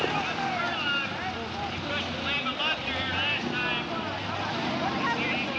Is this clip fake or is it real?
real